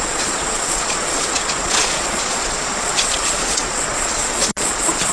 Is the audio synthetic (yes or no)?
yes